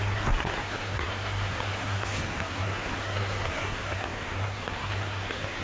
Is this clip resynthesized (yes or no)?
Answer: yes